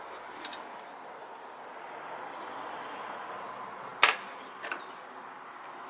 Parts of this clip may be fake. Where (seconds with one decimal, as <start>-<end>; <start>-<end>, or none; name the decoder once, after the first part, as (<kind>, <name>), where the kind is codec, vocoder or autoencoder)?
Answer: none